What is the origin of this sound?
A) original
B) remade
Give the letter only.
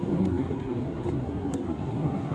B